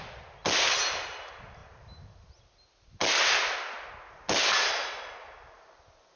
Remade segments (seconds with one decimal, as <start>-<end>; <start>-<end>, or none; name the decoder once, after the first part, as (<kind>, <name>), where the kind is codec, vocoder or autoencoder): none